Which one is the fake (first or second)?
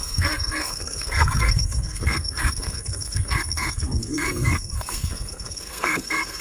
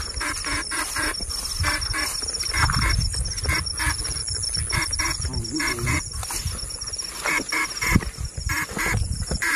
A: first